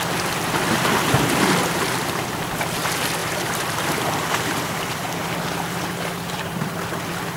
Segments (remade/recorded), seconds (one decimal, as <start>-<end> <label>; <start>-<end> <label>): 0.0-3.2 recorded; 3.2-5.2 remade; 5.2-7.4 recorded